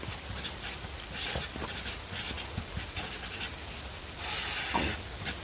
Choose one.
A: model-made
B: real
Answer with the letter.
B